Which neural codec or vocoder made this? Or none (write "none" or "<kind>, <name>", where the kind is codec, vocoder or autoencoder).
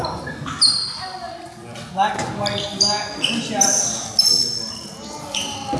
none